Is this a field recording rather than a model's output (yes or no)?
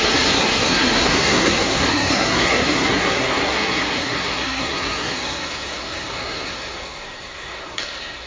no